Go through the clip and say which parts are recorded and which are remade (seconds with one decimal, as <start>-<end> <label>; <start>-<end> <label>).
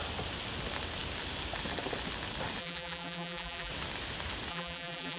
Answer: 0.0-2.6 recorded; 2.6-3.7 remade; 3.7-4.5 recorded; 4.5-5.2 remade